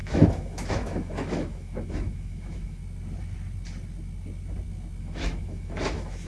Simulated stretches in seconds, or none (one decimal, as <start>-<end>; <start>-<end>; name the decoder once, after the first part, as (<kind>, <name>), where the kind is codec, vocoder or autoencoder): 0.0-2.8 (autoencoder, DAC-VAE); 5.0-6.3